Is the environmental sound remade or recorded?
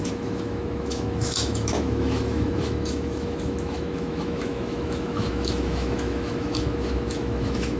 remade